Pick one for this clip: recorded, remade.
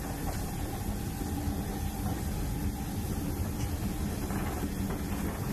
recorded